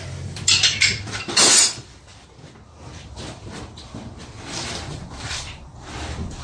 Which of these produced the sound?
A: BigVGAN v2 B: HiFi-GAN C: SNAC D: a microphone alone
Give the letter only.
A